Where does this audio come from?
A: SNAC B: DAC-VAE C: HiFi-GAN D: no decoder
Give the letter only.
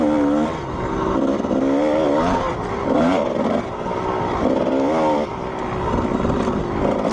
D